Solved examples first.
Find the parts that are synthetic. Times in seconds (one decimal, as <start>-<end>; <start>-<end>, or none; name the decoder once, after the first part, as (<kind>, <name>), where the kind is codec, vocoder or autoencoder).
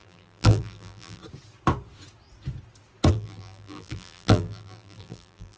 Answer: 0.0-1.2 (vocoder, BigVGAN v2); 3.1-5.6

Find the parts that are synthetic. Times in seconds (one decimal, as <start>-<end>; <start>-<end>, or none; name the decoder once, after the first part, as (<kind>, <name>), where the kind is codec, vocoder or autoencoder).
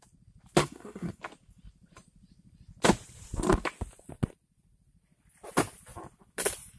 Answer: 0.6-1.2 (codec, SNAC)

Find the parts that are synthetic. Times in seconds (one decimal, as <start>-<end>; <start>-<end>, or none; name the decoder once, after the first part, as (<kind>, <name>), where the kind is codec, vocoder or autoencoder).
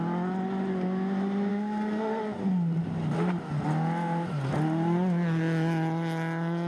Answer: 1.5-2.2 (codec, SNAC)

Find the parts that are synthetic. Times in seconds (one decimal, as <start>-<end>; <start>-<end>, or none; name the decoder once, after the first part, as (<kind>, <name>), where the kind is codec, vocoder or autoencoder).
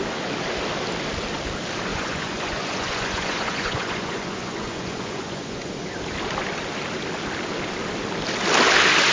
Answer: 1.9-5.7 (vocoder, Vocos)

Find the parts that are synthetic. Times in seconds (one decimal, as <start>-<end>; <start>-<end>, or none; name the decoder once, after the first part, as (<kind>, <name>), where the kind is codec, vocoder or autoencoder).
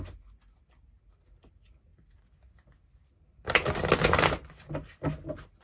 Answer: none